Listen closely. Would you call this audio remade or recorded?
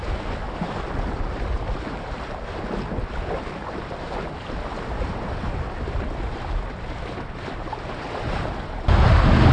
recorded